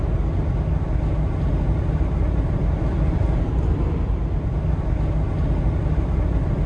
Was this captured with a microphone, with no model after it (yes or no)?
yes